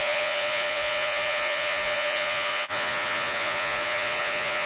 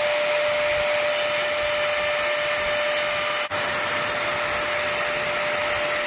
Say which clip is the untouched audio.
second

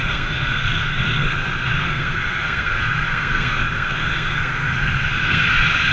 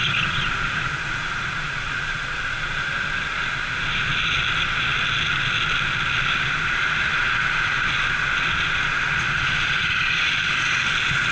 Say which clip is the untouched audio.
second